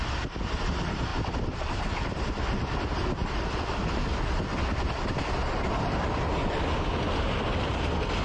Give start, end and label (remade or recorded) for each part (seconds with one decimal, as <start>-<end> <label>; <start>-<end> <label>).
0.0-1.1 recorded; 1.1-2.2 remade; 2.2-3.2 recorded; 3.2-4.2 remade; 4.2-8.2 recorded